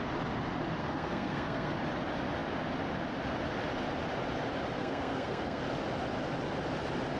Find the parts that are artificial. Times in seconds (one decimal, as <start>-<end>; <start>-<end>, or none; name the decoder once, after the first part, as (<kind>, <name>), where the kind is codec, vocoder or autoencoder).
0.8-1.7 (codec, SNAC); 4.8-5.6